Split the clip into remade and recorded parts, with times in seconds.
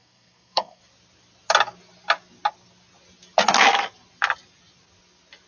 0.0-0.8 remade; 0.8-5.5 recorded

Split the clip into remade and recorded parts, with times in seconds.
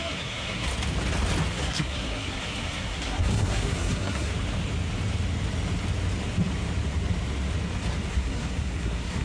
0.0-0.7 remade; 0.7-1.5 recorded; 1.5-4.3 remade; 4.3-8.1 recorded; 8.1-9.2 remade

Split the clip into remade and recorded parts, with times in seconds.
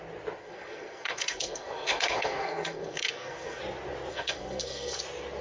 0.0-0.4 recorded; 0.4-3.6 remade; 3.6-4.1 recorded; 4.1-5.0 remade; 5.0-5.4 recorded